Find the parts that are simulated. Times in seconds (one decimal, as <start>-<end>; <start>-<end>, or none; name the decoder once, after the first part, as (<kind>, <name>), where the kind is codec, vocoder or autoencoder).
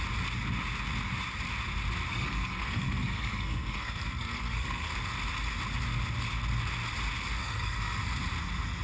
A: 2.1-4.9 (codec, SNAC); 7.4-8.0